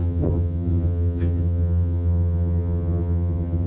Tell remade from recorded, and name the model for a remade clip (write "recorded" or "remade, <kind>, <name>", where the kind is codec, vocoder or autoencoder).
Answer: remade, vocoder, HiFi-GAN